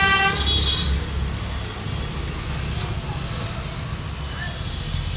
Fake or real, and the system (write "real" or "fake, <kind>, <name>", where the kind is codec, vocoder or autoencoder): real